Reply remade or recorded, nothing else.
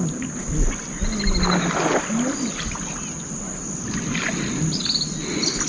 recorded